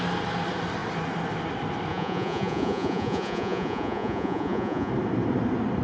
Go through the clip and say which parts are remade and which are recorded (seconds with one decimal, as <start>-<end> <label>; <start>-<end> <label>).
0.0-1.9 recorded; 1.9-4.9 remade; 4.9-5.8 recorded